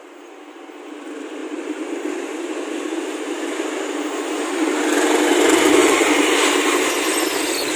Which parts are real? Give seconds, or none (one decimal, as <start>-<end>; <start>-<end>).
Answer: 0.0-1.4; 1.9-5.8; 6.6-7.8